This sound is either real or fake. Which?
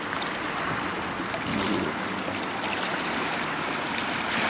real